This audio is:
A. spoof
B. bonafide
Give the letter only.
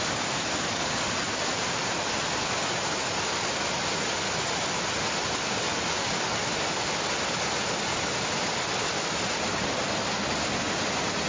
B